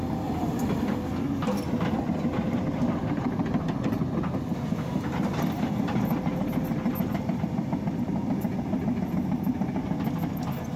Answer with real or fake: real